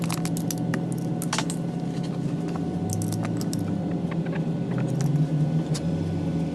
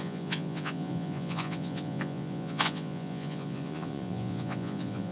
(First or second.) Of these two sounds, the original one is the first